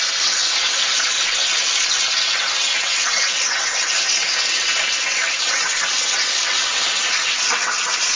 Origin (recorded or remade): remade